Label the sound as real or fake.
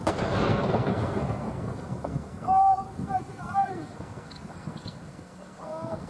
fake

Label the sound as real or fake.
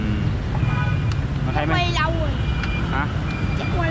real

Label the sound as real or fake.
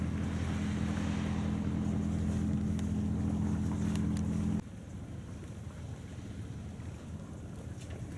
real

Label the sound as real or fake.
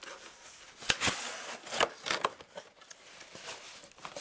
real